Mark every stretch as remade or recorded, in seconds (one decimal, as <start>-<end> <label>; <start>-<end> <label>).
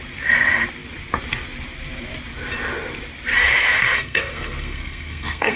0.0-3.8 recorded; 3.8-5.6 remade